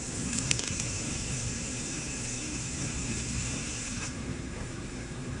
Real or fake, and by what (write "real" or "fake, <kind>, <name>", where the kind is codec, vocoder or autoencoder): fake, codec, SNAC